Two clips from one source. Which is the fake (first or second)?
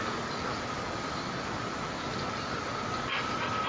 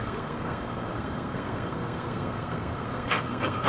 second